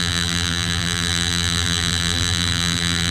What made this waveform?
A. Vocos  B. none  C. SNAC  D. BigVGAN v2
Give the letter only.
D